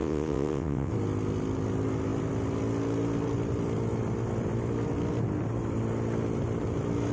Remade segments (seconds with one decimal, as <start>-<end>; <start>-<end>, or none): 0.0-0.9